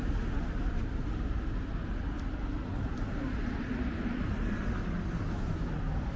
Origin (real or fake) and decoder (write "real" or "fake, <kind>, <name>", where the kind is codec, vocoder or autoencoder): real